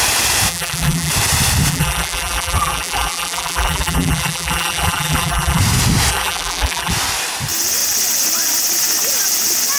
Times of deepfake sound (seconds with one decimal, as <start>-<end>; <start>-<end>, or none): 0.5-1.1; 1.7-5.6; 6.1-6.9